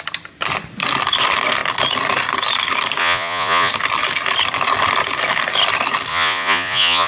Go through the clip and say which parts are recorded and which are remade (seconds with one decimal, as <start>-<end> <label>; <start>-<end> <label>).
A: 0.0-3.0 recorded; 3.0-3.7 remade; 3.7-6.1 recorded; 6.1-7.1 remade